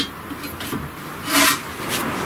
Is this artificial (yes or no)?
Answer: no